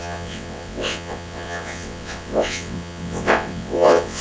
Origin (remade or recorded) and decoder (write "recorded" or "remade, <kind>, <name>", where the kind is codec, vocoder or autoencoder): remade, vocoder, WaveNeXt